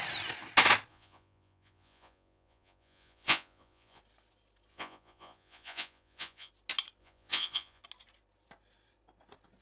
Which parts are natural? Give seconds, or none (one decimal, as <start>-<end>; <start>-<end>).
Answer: 0.0-0.9; 4.0-4.7; 6.5-7.0; 7.8-9.6